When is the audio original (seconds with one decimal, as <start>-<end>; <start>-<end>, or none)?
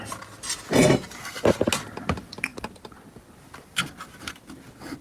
0.0-5.0